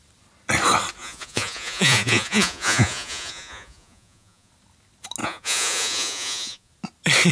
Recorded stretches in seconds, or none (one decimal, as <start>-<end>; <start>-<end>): 0.0-1.0; 4.5-5.2; 6.7-7.3